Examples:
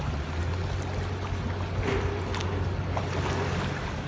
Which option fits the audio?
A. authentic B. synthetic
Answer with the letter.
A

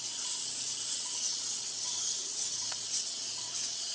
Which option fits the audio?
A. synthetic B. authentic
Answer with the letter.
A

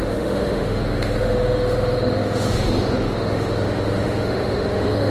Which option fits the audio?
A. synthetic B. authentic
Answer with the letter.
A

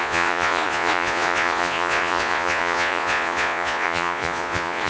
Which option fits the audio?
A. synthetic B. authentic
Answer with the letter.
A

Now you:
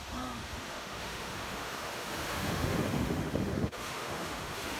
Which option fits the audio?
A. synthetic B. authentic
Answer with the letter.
A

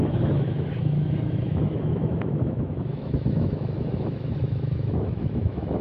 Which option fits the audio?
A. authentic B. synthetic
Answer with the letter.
B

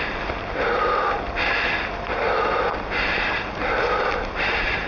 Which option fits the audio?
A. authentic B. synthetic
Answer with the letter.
A